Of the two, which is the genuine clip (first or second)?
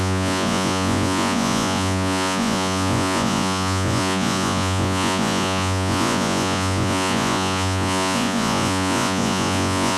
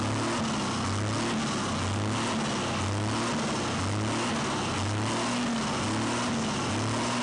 second